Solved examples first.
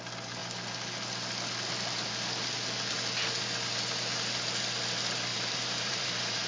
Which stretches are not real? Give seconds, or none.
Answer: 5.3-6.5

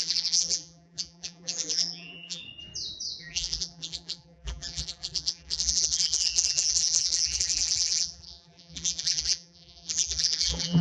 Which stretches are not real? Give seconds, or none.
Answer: 0.0-2.4; 3.2-10.8

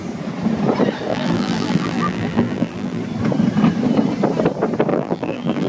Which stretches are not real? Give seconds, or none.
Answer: 1.1-3.0; 4.9-5.7

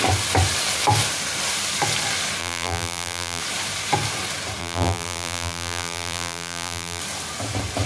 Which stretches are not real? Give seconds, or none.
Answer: 2.4-3.4; 4.6-7.0

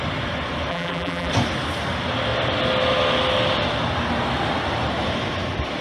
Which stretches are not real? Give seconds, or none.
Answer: 0.7-1.3

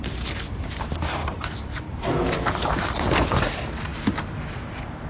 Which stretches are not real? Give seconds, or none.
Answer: 1.2-2.7

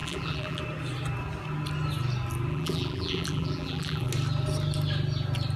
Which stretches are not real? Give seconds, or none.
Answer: 0.0-0.6; 2.5-4.1